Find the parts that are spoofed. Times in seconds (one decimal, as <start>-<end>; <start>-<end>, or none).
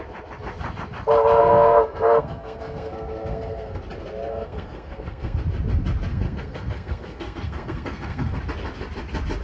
1.4-3.8; 4.3-5.4; 6.1-8.4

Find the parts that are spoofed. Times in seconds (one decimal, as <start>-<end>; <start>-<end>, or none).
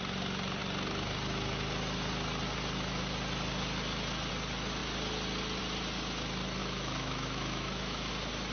6.6-8.1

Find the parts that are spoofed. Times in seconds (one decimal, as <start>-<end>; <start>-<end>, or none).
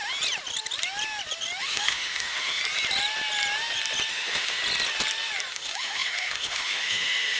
1.6-2.6; 4.1-4.6; 5.5-7.4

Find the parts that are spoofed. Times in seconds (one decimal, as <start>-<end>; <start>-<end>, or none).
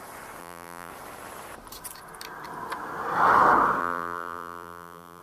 0.4-0.9; 3.8-5.2